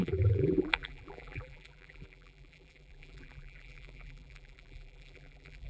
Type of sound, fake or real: fake